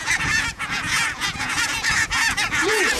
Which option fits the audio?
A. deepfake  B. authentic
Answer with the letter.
A